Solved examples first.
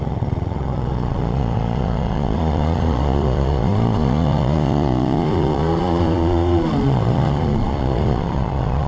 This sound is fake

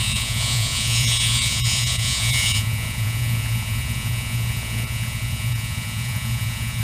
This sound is fake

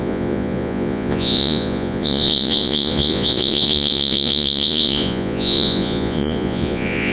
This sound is fake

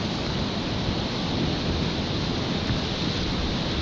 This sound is real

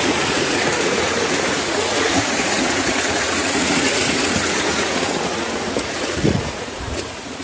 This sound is fake